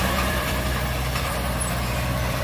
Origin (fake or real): fake